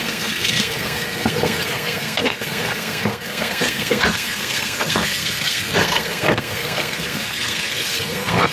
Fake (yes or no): yes